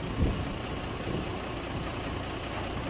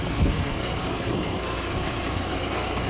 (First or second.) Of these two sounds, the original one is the first